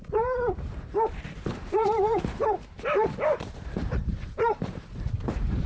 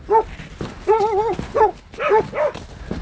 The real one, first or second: second